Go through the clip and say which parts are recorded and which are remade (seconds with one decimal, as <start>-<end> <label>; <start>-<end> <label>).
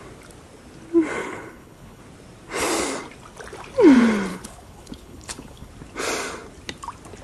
0.0-1.2 recorded; 1.2-2.0 remade; 2.0-4.3 recorded; 4.3-5.7 remade; 5.7-7.2 recorded